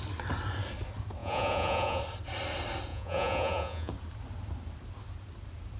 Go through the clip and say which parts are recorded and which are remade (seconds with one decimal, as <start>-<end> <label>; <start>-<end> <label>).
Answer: 0.0-1.2 recorded; 1.2-2.0 remade; 2.0-2.9 recorded; 2.9-3.9 remade; 3.9-5.8 recorded